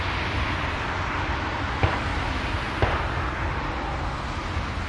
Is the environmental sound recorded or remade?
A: recorded